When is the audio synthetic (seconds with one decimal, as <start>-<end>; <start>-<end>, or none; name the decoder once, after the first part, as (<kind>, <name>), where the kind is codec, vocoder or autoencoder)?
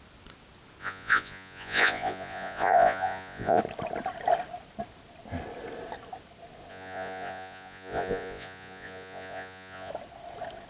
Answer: 0.8-3.6 (vocoder, Vocos); 6.7-9.9